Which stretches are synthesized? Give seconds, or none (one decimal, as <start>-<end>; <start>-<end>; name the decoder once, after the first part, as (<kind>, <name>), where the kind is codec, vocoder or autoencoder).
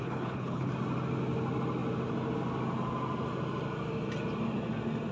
0.0-0.7 (codec, HILCodec)